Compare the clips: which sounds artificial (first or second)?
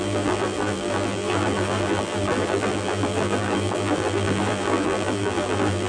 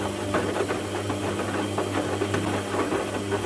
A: first